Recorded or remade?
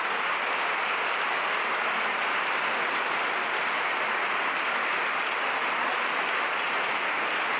recorded